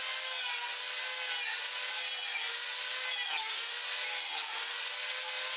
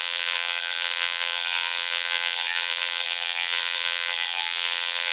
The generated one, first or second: second